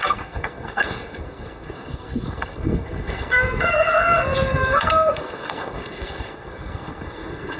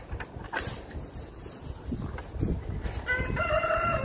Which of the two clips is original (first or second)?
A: second